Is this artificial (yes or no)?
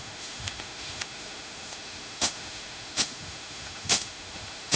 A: yes